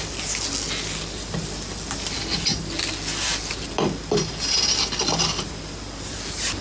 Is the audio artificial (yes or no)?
no